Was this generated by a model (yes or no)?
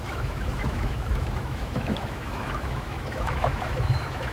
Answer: yes